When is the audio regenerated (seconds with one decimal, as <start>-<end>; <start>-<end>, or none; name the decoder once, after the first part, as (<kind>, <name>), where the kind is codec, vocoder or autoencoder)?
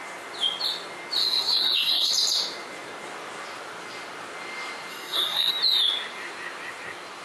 1.2-2.1 (codec, SNAC); 4.9-5.5